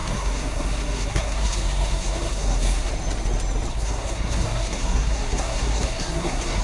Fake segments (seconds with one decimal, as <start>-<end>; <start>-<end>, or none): 0.0-2.9; 3.7-6.6